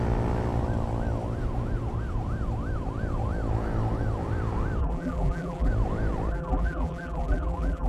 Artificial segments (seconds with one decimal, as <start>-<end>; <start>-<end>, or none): 4.8-5.7; 6.3-7.9

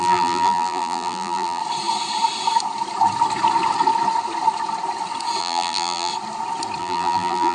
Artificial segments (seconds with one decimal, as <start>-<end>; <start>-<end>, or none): 0.0-1.6; 5.4-6.1; 6.8-7.5

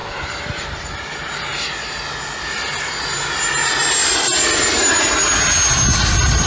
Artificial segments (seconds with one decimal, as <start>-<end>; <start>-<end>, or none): 0.0-0.9

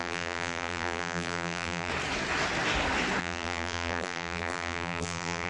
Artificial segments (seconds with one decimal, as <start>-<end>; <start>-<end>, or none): 0.0-1.9; 3.2-5.5

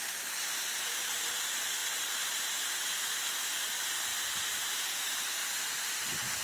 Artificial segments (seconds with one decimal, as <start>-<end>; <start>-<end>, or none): 4.1-5.0; 5.4-6.4